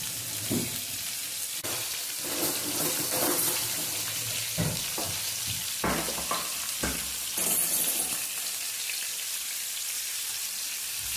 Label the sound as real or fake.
real